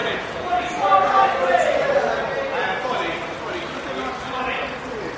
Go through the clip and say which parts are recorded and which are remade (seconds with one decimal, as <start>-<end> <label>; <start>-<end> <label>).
0.0-0.5 remade; 0.5-5.2 recorded